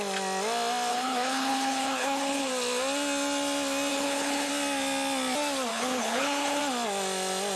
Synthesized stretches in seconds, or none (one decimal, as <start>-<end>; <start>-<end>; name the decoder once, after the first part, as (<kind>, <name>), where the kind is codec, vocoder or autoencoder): 0.9-2.5 (codec, HILCodec); 3.9-4.5; 5.7-6.6